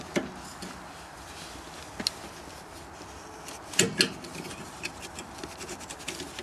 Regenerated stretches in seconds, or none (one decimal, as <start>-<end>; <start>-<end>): 4.5-5.0